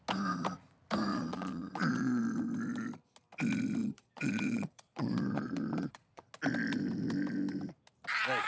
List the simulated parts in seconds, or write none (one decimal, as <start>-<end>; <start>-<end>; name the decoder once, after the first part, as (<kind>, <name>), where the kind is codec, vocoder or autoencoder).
1.1-2.2 (vocoder, Vocos); 3.8-6.2